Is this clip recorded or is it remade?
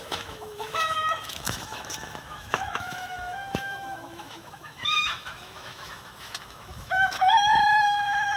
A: remade